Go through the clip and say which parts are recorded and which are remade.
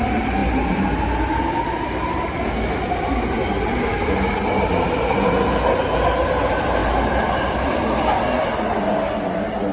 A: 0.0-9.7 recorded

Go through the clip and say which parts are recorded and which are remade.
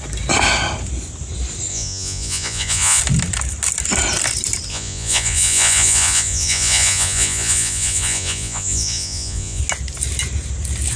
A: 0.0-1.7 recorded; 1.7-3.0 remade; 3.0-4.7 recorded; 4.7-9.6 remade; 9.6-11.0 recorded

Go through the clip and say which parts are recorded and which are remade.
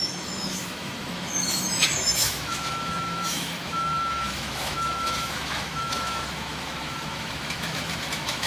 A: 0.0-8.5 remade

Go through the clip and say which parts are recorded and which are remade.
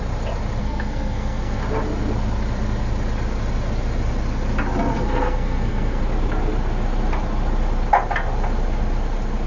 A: 0.0-0.6 recorded; 0.6-1.6 remade; 1.6-4.9 recorded; 4.9-6.0 remade; 6.0-9.5 recorded